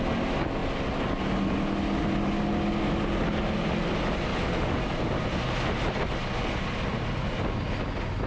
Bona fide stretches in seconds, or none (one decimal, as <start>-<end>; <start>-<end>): 0.0-8.3